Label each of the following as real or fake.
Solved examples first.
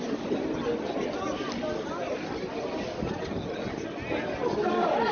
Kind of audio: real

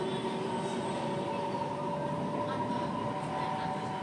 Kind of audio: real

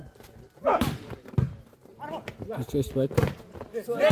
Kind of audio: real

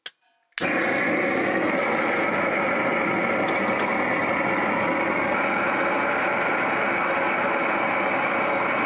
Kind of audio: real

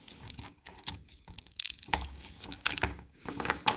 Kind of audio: fake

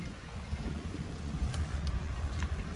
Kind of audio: fake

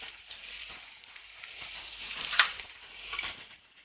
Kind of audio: fake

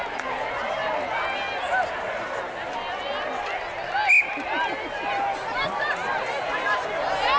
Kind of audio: real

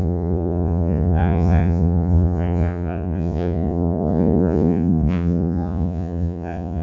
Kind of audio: fake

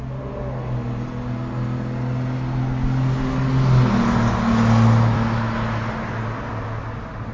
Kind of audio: real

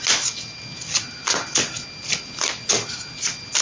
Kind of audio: real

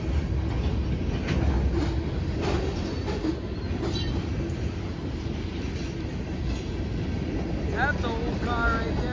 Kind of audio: real